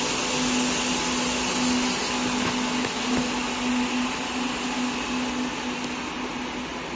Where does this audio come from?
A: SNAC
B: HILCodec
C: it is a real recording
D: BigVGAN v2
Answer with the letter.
C